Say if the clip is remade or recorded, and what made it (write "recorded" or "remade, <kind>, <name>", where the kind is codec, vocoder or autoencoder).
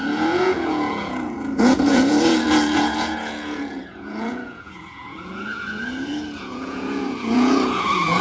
remade, vocoder, Vocos